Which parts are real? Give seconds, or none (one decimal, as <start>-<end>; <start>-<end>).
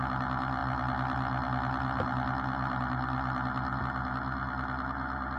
0.0-5.4